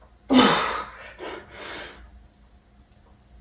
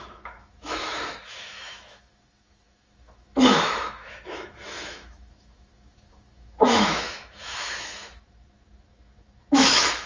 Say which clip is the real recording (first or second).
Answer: first